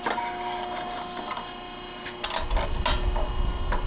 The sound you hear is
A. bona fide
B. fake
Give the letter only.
A